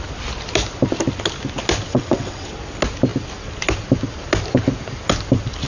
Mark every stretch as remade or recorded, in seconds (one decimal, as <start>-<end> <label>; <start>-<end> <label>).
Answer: 0.0-1.9 recorded; 1.9-2.5 remade; 2.5-5.7 recorded